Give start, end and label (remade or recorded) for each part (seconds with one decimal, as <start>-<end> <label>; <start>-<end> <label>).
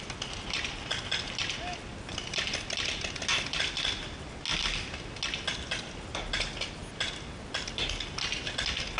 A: 0.0-9.0 recorded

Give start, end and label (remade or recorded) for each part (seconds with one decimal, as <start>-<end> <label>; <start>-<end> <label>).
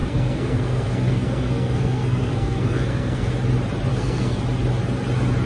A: 0.0-3.3 remade; 3.3-3.9 recorded; 3.9-4.4 remade; 4.4-5.5 recorded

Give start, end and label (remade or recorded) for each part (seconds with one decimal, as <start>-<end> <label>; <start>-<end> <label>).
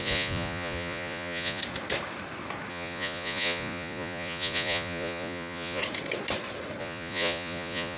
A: 0.0-1.6 remade; 1.6-2.7 recorded; 2.7-5.8 remade; 5.8-6.8 recorded; 6.8-8.0 remade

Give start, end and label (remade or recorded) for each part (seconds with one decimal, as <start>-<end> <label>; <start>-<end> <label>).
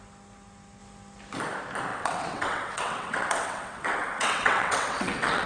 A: 0.0-1.9 recorded; 1.9-5.5 remade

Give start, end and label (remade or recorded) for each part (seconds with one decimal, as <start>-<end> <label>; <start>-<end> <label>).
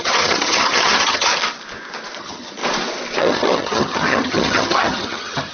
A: 0.0-1.3 remade; 1.3-2.2 recorded; 2.2-2.6 remade; 2.6-3.2 recorded; 3.2-5.5 remade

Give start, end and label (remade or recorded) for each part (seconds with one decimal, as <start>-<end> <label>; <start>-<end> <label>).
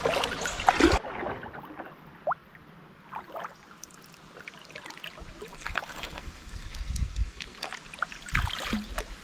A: 0.0-5.5 recorded; 5.5-7.7 remade; 7.7-9.2 recorded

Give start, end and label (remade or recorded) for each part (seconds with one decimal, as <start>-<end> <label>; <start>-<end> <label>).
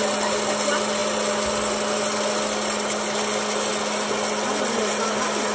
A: 0.0-5.5 recorded